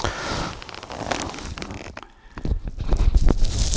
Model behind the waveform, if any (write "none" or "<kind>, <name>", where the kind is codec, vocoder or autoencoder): none